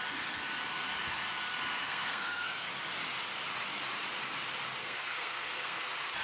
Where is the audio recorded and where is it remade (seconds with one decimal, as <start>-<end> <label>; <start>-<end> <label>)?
0.0-1.8 recorded; 1.8-2.7 remade; 2.7-4.8 recorded; 4.8-5.8 remade; 5.8-6.2 recorded